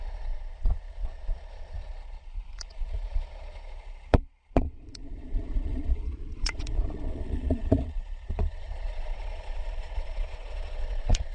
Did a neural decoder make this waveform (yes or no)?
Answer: yes